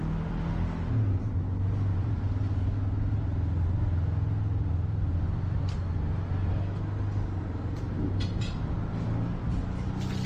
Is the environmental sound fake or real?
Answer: real